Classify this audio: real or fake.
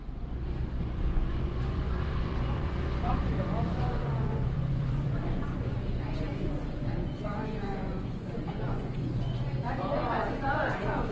fake